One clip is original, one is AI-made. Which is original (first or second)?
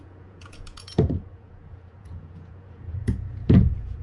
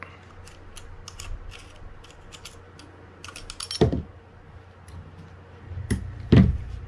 second